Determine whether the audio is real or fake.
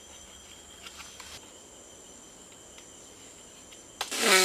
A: real